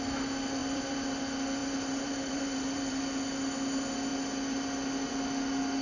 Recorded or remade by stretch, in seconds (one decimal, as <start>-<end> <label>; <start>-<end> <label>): 0.0-0.6 recorded; 0.6-1.1 remade; 1.1-1.6 recorded; 1.6-3.0 remade; 3.0-5.8 recorded